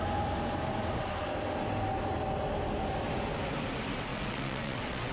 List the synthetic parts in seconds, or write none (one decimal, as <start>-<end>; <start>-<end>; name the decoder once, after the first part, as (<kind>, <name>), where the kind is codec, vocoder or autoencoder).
4.1-5.1 (vocoder, WaveNeXt)